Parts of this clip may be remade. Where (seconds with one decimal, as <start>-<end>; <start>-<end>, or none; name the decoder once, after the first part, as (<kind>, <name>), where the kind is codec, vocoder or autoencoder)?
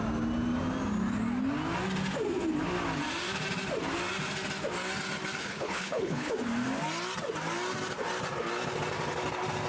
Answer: 5.4-6.3 (codec, HILCodec)